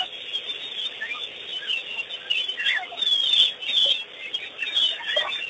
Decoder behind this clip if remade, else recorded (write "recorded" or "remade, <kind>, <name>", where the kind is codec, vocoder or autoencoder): recorded